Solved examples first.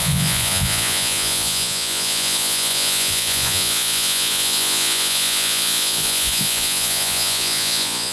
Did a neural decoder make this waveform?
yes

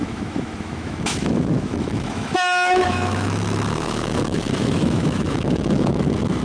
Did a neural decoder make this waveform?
yes